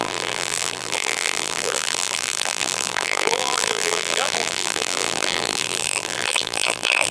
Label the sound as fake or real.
fake